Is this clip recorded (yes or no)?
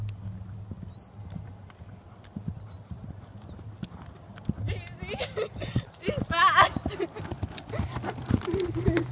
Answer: yes